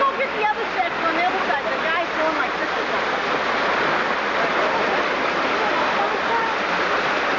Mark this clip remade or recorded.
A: recorded